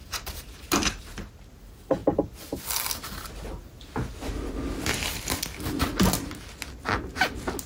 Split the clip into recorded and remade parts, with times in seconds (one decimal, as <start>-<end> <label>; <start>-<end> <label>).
0.0-1.3 remade; 1.3-7.7 recorded